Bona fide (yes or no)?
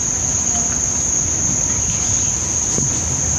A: yes